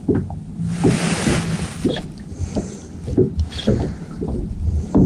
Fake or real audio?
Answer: real